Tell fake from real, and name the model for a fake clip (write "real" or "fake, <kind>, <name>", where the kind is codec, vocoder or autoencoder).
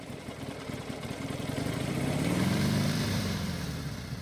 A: fake, vocoder, BigVGAN v2